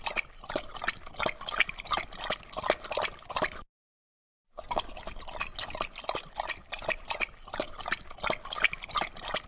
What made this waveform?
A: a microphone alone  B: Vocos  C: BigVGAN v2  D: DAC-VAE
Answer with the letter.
A